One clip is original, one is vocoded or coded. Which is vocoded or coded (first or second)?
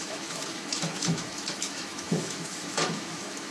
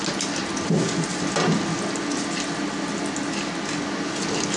first